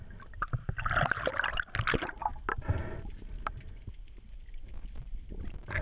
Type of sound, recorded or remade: recorded